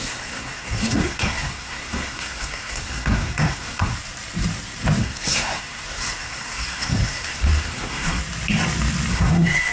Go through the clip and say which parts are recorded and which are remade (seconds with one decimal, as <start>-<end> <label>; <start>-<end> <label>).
0.0-3.9 remade; 3.9-5.0 recorded; 5.0-8.2 remade; 8.2-9.1 recorded; 9.1-9.7 remade